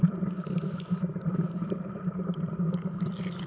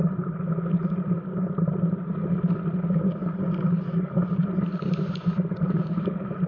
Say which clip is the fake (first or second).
first